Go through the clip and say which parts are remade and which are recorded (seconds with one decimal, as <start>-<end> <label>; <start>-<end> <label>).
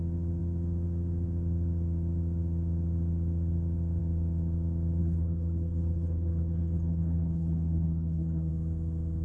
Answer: 0.0-5.0 recorded; 5.0-8.5 remade; 8.5-9.2 recorded